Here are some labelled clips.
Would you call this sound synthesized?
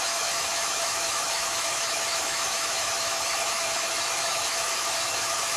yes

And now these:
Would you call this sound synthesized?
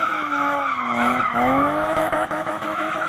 yes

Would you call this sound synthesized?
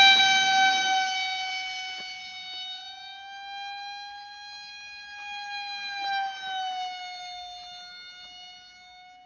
no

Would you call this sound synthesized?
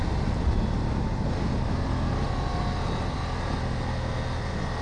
no